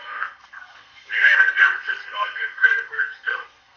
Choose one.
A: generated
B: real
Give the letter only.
A